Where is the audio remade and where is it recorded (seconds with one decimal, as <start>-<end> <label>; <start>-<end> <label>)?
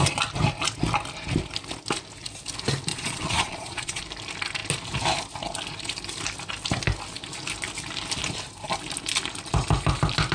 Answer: 0.0-2.9 recorded; 2.9-4.0 remade; 4.0-10.3 recorded